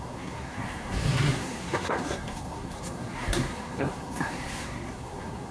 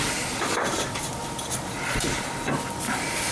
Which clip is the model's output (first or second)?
first